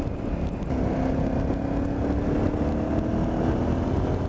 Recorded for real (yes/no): yes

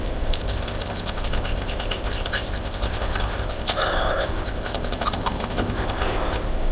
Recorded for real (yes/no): no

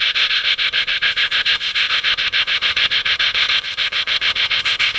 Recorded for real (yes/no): no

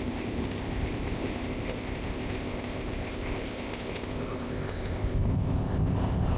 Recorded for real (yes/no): no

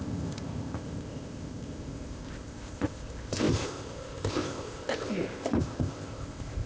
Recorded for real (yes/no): no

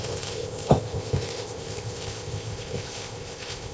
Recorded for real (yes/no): no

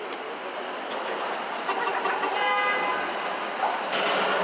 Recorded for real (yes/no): yes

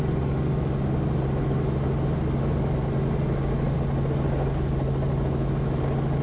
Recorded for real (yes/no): yes